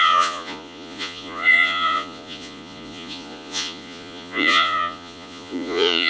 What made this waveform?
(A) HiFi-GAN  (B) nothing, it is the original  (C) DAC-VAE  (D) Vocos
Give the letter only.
D